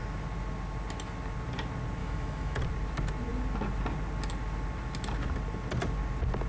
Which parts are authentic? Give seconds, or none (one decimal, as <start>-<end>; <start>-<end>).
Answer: 0.0-2.0; 2.6-6.5